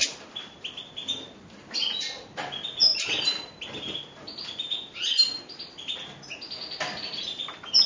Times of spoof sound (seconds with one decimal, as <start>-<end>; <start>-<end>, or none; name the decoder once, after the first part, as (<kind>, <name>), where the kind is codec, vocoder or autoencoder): none